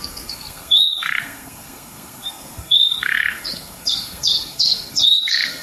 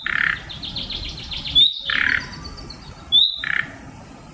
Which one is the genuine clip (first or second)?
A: second